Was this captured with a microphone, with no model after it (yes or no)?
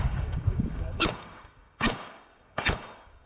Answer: no